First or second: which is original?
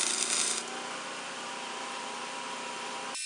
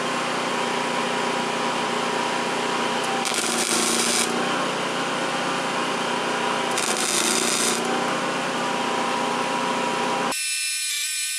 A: second